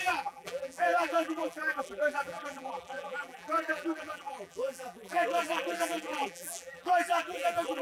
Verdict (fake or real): fake